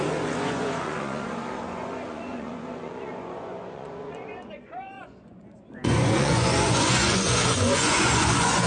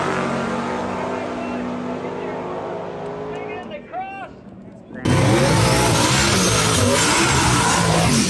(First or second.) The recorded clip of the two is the second